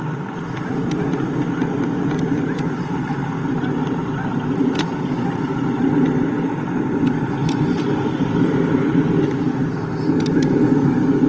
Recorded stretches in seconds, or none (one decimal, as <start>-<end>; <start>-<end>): 0.0-4.0; 5.6-7.4; 8.5-11.3